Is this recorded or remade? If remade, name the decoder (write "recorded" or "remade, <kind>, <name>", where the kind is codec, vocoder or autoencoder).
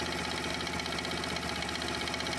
recorded